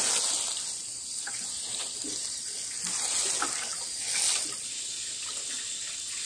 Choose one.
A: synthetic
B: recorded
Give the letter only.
B